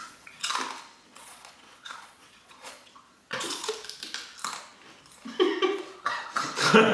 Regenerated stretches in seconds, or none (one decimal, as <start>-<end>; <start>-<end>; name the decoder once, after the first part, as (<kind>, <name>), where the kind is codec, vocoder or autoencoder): 0.0-0.5 (vocoder, Vocos); 1.1-3.7